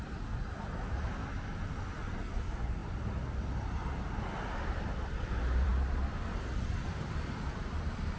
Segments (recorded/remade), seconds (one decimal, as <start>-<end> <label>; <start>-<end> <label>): 0.0-1.2 remade; 1.2-1.9 recorded; 1.9-5.7 remade; 5.7-6.3 recorded; 6.3-8.2 remade